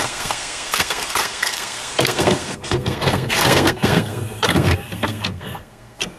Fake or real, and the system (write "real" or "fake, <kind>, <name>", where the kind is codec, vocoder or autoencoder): fake, codec, SNAC